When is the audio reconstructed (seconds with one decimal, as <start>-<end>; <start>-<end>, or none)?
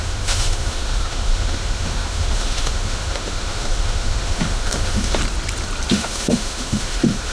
0.0-5.2; 5.9-7.3